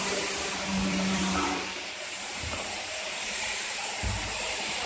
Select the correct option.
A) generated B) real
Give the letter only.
A